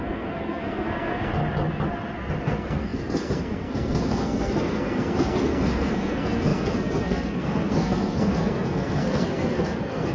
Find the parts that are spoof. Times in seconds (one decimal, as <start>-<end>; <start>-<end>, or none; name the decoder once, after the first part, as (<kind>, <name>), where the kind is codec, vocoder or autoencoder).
0.0-1.4 (codec, SNAC); 2.4-10.1

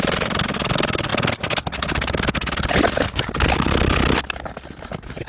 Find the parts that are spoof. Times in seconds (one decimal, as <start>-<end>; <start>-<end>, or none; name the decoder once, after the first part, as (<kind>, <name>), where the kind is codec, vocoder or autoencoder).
none